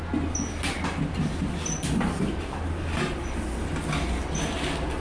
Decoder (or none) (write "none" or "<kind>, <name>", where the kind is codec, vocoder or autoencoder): none